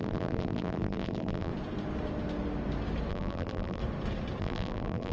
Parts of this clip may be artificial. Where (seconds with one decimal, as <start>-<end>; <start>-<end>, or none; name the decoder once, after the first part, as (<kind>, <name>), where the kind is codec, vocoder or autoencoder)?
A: 0.0-1.5 (vocoder, BigVGAN v2); 3.1-3.8; 4.4-5.1